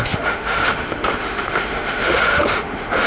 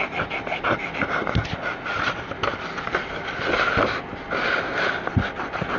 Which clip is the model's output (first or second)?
first